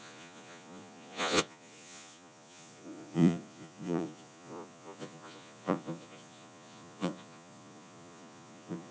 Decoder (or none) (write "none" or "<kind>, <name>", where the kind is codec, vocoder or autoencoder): vocoder, Vocos